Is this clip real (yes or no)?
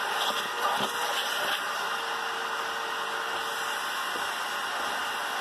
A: yes